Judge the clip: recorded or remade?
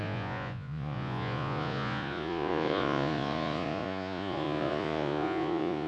remade